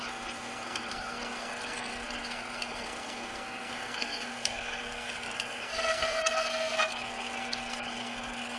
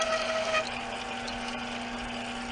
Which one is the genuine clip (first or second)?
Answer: second